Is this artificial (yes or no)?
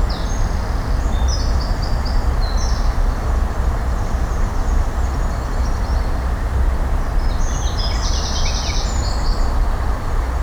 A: no